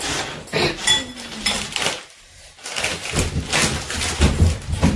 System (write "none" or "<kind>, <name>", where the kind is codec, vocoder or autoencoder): none